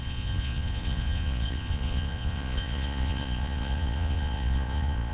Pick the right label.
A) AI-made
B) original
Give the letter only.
A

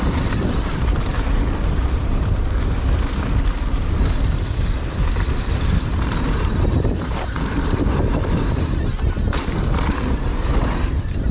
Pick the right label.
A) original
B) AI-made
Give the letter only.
B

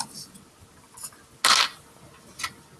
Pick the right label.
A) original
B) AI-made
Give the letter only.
A